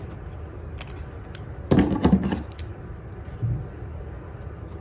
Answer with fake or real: real